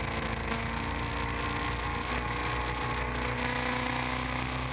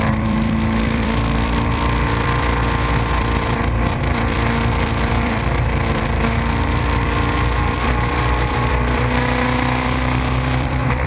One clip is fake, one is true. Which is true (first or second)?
first